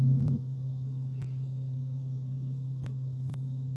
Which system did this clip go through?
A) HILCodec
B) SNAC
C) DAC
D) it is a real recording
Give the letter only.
B